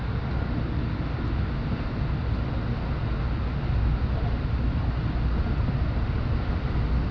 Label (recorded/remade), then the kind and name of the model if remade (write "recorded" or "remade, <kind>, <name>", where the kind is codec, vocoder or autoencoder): recorded